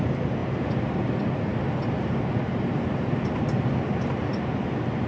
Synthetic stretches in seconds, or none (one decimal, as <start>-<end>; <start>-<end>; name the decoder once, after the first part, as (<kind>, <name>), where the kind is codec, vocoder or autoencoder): 0.4-1.0 (vocoder, BigVGAN v2)